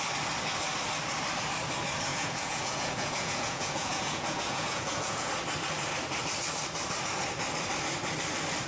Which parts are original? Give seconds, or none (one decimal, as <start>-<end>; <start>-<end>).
0.0-2.1; 5.3-8.7